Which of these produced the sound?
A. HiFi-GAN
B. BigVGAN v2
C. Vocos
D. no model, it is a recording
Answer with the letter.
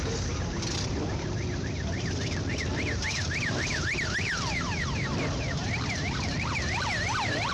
B